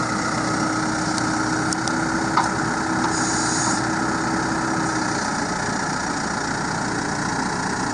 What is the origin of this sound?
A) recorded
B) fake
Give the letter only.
A